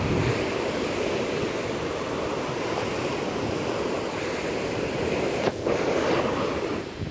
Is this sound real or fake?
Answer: real